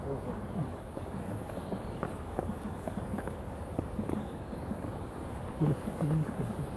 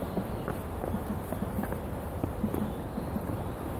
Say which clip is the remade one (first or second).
first